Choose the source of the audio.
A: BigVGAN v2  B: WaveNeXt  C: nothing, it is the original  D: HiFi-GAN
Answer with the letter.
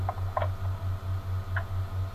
C